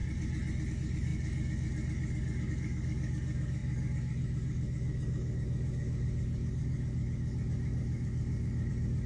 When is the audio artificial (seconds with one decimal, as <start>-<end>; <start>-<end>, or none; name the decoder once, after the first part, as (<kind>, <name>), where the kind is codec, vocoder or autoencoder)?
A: 0.7-9.1 (codec, DAC)